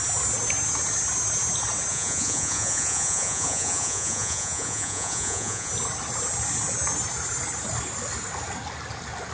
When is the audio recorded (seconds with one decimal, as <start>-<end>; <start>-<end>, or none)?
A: 0.0-1.9; 5.7-9.3